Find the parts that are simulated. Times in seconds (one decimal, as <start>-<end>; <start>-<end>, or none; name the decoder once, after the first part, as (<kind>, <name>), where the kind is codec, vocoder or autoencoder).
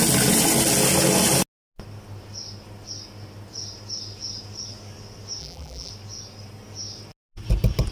5.4-5.9 (vocoder, BigVGAN v2)